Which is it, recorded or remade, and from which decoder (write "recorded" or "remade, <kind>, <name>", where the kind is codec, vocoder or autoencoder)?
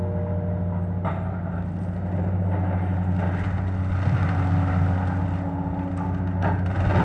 recorded